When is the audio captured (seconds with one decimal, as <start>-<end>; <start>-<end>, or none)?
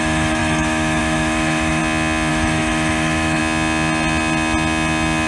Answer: 1.8-2.3; 3.4-5.3